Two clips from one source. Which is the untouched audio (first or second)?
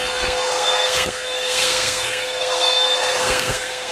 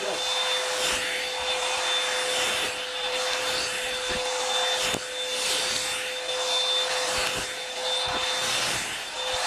second